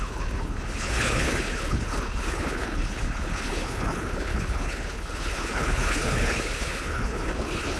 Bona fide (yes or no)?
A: no